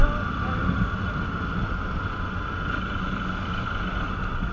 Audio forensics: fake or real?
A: real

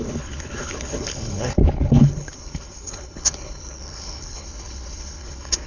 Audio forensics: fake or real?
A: fake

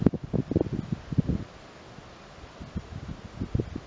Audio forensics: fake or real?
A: real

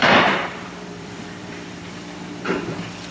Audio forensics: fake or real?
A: fake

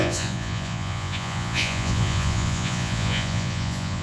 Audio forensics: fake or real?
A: fake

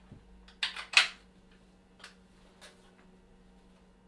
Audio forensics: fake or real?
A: real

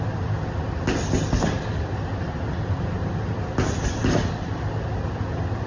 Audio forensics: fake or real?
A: real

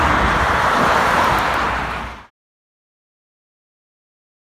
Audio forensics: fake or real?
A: real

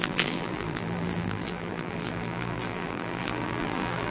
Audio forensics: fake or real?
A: fake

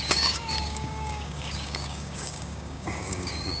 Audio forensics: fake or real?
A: fake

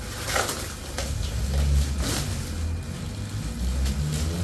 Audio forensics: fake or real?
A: real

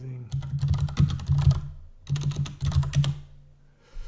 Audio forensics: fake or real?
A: real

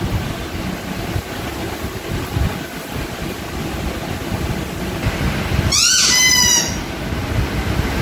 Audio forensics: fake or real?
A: real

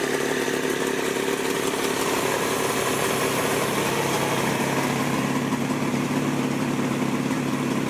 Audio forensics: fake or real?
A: real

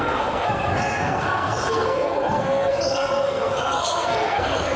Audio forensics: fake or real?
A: fake